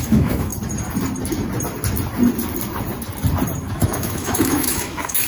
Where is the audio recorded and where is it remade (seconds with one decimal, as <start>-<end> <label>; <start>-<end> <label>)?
0.0-0.5 remade; 0.5-3.7 recorded; 3.7-5.3 remade